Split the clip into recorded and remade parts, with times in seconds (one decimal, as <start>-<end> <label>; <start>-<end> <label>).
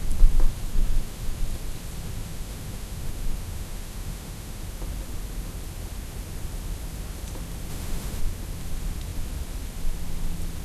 0.0-0.7 recorded; 0.7-1.4 remade; 1.4-2.2 recorded; 2.2-4.6 remade; 4.6-7.7 recorded; 7.7-8.2 remade; 8.2-10.6 recorded